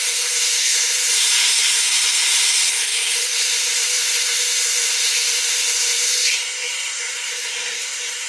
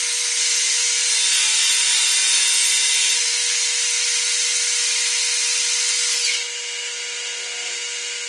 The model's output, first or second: first